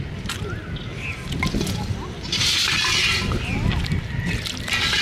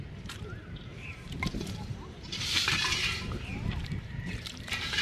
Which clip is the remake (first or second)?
second